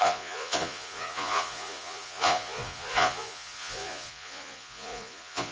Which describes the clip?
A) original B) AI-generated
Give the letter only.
B